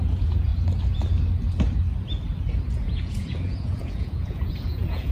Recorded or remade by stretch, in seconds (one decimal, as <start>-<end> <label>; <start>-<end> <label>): 0.0-0.5 remade; 0.5-2.8 recorded; 2.8-5.1 remade